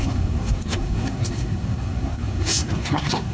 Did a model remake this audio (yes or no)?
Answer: yes